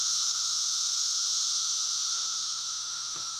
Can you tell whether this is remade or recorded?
remade